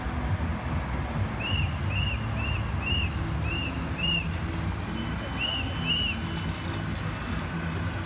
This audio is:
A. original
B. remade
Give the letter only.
A